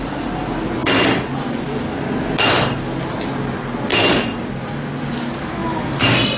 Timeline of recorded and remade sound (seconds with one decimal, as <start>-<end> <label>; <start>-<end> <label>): 0.0-3.9 recorded; 3.9-4.5 remade; 4.5-6.4 recorded

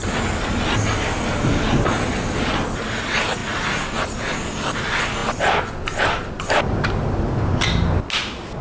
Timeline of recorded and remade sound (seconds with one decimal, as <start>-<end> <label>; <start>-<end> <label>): 0.0-3.4 recorded; 3.4-4.2 remade; 4.2-8.6 recorded

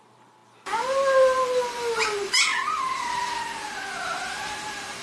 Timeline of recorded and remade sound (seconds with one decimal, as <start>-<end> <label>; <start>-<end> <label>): 0.0-2.5 remade; 2.5-4.2 recorded; 4.2-5.0 remade

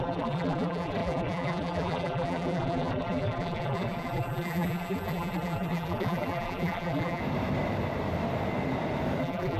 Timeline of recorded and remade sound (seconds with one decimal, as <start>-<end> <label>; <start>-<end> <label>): 0.0-7.2 remade; 7.2-9.2 recorded; 9.2-9.6 remade

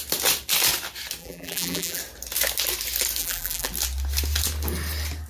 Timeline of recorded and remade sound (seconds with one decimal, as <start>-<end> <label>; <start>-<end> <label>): 0.0-1.2 recorded; 1.2-2.0 remade; 2.0-3.2 recorded; 3.2-3.7 remade; 3.7-5.3 recorded

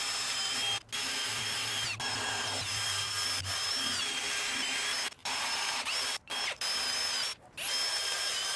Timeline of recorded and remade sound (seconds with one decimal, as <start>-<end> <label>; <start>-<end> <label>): 0.0-5.2 recorded; 5.2-6.3 remade; 6.3-8.6 recorded